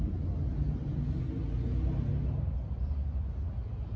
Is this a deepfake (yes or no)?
no